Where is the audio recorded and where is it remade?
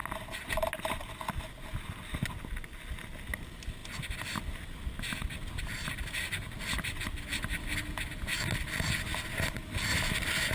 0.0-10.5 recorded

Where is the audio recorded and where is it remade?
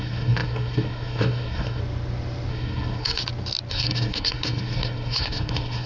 0.0-1.8 remade; 1.8-2.5 recorded; 2.5-3.2 remade; 3.2-3.7 recorded; 3.7-5.9 remade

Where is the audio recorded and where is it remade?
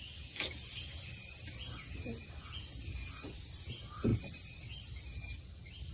0.0-5.9 recorded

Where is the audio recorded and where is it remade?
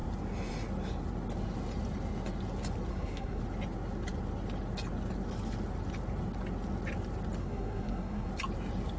0.0-2.9 recorded; 2.9-3.4 remade; 3.4-7.4 recorded; 7.4-8.3 remade; 8.3-9.0 recorded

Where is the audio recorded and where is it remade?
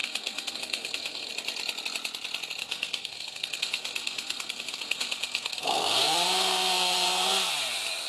0.0-1.3 remade; 1.3-2.6 recorded; 2.6-7.5 remade; 7.5-8.1 recorded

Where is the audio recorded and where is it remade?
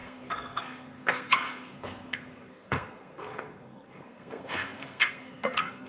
0.0-5.9 remade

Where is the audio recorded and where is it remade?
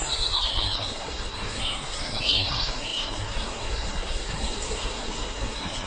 0.0-5.9 remade